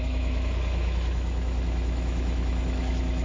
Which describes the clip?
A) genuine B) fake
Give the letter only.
B